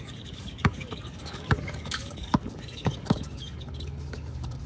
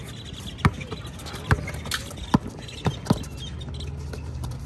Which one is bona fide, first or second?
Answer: second